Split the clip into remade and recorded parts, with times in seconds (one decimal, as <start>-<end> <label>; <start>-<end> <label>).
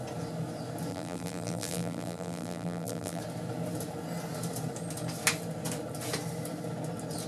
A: 0.0-0.9 recorded; 0.9-3.2 remade; 3.2-7.3 recorded